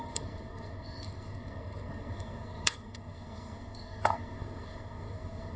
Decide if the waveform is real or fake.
fake